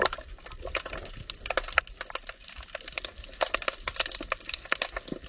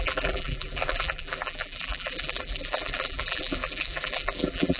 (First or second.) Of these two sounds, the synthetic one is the second